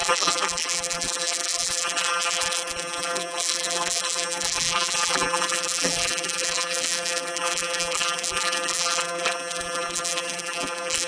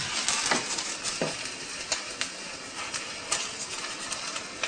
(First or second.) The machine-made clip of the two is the first